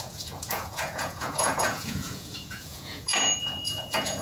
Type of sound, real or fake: fake